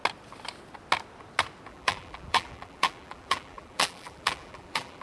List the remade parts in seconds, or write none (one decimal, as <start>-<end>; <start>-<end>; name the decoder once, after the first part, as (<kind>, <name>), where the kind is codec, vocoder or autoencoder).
1.7-5.0 (vocoder, BigVGAN v2)